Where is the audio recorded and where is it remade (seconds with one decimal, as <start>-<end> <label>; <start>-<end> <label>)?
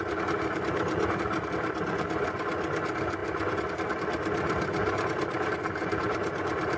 0.0-4.8 recorded; 4.8-6.8 remade